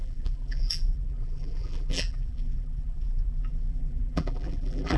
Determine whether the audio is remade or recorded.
remade